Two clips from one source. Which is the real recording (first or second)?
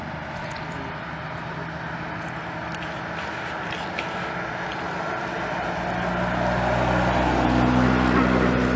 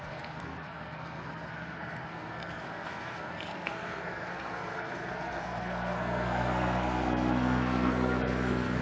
first